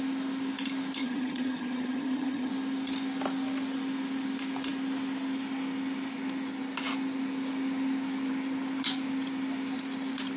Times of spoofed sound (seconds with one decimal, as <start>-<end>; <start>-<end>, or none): 1.0-2.5

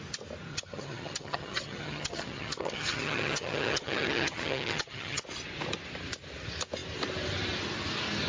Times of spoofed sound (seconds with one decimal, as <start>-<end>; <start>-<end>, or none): 0.5-5.2

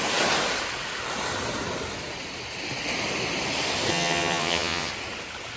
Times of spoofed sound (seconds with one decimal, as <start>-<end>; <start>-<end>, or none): 3.9-4.9

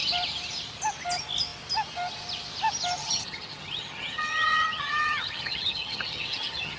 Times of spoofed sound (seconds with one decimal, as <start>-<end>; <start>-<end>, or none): 3.0-6.8

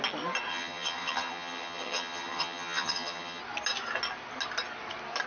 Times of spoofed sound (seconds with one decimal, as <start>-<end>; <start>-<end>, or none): 0.5-3.4